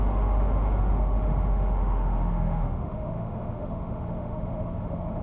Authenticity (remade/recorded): remade